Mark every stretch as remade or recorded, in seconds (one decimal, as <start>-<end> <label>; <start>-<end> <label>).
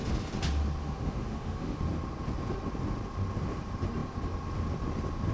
0.0-0.8 recorded; 0.8-1.8 remade; 1.8-5.3 recorded